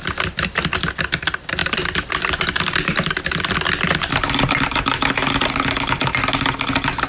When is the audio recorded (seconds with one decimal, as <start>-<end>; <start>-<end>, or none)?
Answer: 0.0-7.1